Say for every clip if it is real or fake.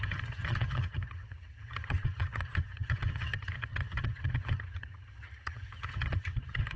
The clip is fake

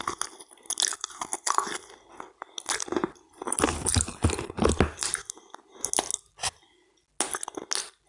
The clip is real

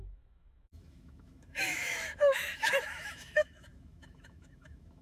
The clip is fake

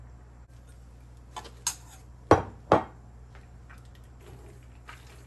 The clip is real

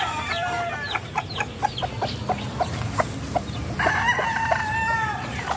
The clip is real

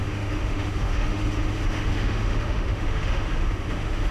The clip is fake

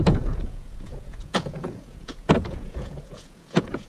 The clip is fake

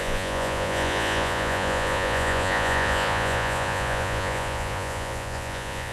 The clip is fake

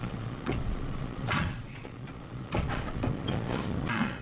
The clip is fake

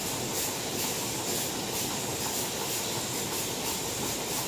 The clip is real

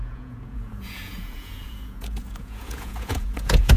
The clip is fake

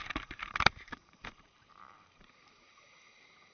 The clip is fake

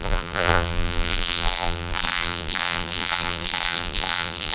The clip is fake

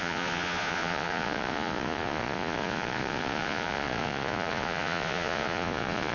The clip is fake